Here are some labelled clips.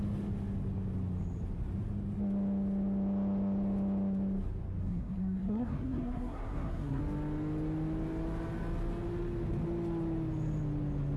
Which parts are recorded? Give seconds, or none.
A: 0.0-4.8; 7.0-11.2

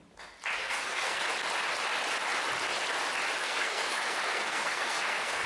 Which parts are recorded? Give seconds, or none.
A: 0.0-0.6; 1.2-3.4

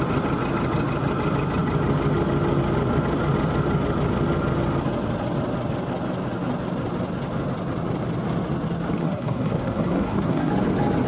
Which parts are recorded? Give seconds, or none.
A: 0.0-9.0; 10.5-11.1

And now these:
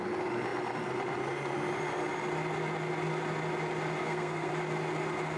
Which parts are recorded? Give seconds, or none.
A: 0.0-4.0; 4.5-5.4

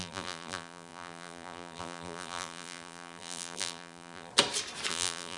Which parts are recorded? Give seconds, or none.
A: 4.3-4.9

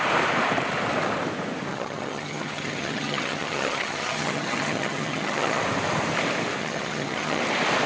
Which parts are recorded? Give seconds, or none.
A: 0.0-1.7; 5.6-6.6; 7.4-7.9

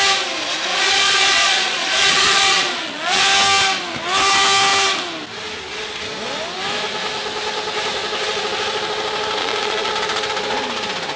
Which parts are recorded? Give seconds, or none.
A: 0.0-0.7; 3.2-9.4; 9.9-11.2